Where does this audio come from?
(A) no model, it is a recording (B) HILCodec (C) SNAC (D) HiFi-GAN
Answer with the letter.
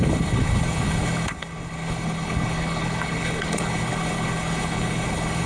B